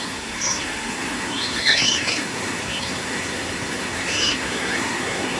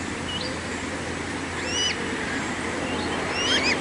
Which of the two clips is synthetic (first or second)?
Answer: first